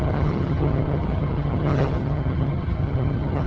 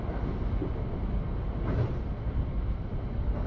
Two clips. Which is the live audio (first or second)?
second